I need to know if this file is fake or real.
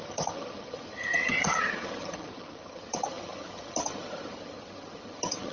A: fake